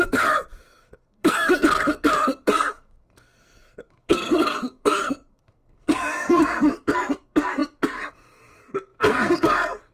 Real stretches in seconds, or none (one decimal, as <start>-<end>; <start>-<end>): none